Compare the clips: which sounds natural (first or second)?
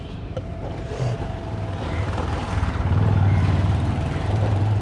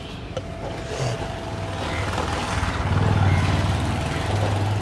second